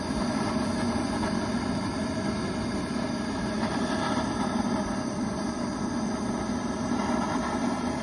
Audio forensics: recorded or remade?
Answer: recorded